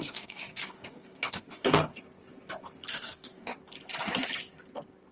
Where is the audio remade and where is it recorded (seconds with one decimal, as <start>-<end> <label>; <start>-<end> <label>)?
0.0-1.9 remade; 1.9-2.9 recorded; 2.9-3.5 remade; 3.5-5.1 recorded

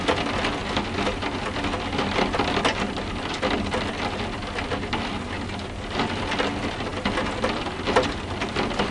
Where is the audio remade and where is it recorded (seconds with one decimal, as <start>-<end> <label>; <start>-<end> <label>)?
0.0-8.9 recorded

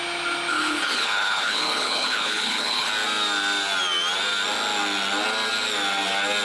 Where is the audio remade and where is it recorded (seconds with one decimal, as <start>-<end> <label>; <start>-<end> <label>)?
0.0-0.5 recorded; 0.5-2.9 remade; 2.9-6.4 recorded

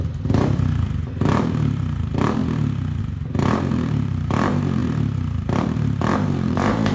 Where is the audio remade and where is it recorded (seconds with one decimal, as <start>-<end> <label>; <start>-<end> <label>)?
0.0-2.4 remade; 2.4-3.0 recorded; 3.0-6.9 remade

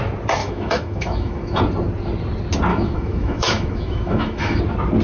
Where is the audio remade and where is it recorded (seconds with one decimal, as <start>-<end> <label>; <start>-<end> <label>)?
0.0-0.4 recorded; 0.4-1.6 remade; 1.6-2.7 recorded; 2.7-4.6 remade; 4.6-5.0 recorded

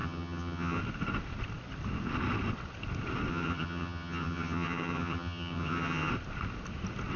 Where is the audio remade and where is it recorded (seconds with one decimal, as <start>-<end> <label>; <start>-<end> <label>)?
0.0-0.8 remade; 0.8-3.3 recorded; 3.3-6.1 remade; 6.1-7.2 recorded

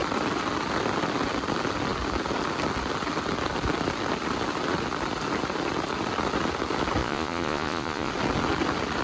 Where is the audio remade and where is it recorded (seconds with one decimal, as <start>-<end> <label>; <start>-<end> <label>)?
0.0-7.0 recorded; 7.0-8.1 remade; 8.1-9.0 recorded

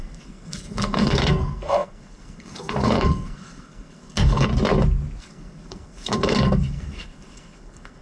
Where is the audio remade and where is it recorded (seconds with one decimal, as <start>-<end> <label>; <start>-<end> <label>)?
0.0-4.5 remade; 4.5-5.2 recorded; 5.2-8.0 remade